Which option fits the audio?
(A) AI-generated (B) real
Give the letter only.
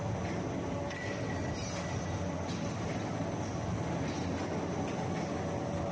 B